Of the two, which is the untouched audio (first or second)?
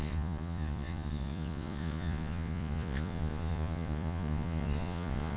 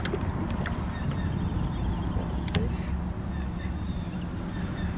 second